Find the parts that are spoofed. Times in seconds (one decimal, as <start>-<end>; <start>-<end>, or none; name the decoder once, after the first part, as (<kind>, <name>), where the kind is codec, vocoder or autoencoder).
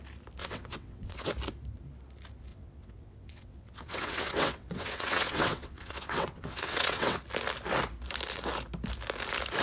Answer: 0.4-1.3 (vocoder, WaveNeXt); 2.5-7.2